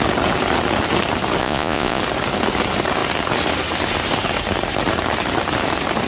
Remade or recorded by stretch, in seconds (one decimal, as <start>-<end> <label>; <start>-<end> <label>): 0.0-1.4 recorded; 1.4-2.0 remade; 2.0-6.1 recorded